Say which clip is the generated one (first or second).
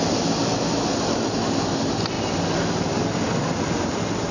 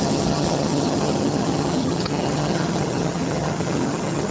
second